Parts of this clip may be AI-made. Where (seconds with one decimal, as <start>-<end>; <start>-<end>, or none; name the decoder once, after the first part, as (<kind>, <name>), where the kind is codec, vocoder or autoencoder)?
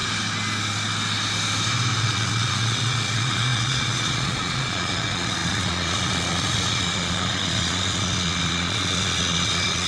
2.0-9.9 (vocoder, Vocos)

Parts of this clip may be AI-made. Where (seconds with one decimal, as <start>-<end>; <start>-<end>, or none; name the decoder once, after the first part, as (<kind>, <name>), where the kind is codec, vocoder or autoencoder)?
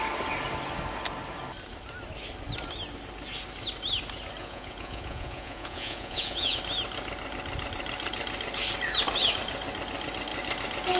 4.4-6.6 (vocoder, Vocos)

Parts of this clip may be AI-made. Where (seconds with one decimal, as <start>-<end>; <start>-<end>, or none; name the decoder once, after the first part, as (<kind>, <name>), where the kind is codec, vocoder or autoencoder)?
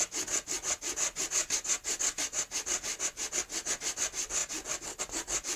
none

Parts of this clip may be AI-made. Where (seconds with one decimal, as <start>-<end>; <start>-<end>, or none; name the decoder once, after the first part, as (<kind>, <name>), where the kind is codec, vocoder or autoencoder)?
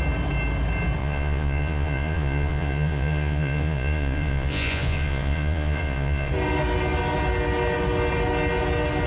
1.0-6.3 (vocoder, Vocos)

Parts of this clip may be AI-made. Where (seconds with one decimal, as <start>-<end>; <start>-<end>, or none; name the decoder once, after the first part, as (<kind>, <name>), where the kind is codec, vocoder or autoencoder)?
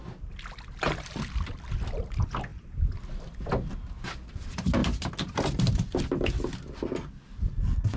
none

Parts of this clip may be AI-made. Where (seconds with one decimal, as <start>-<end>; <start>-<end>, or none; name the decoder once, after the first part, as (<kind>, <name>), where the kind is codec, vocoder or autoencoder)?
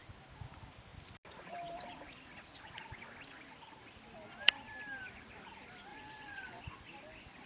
5.9-6.6 (vocoder, Vocos)